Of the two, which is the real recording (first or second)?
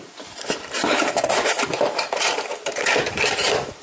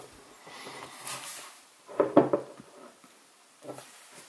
second